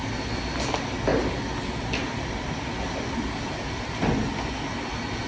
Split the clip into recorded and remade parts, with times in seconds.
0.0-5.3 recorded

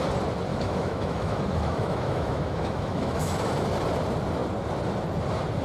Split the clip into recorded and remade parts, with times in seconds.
0.0-0.5 recorded; 0.5-3.5 remade; 3.5-5.6 recorded

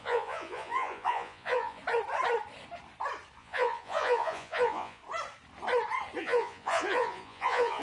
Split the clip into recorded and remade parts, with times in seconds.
0.0-1.8 remade; 1.8-3.4 recorded; 3.4-5.0 remade; 5.0-6.2 recorded; 6.2-7.8 remade

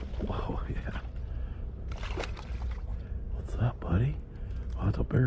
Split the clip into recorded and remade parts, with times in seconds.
0.0-2.9 recorded; 2.9-3.7 remade; 3.7-5.3 recorded

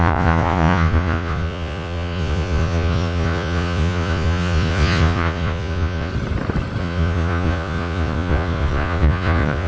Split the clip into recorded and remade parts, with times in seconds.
0.0-6.1 remade; 6.1-6.8 recorded; 6.8-9.7 remade

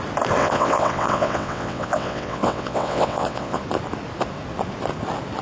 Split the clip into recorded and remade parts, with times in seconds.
0.0-0.4 recorded; 0.4-3.6 remade; 3.6-5.4 recorded

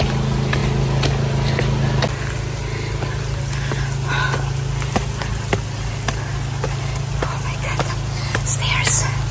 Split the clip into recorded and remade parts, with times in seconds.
0.0-9.3 recorded

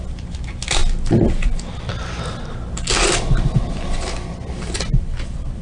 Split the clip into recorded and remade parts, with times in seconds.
0.0-5.6 recorded